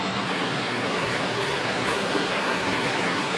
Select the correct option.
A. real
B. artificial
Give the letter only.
B